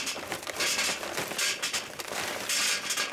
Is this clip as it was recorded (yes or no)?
yes